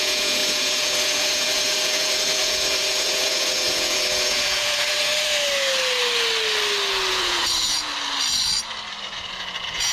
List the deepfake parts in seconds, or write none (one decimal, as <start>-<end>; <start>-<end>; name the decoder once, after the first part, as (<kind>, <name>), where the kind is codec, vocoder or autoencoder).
0.0-5.1 (vocoder, Vocos); 7.1-7.9; 9.0-9.9